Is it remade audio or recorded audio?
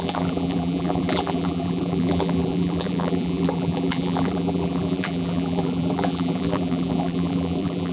remade